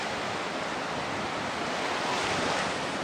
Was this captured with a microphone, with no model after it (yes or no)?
yes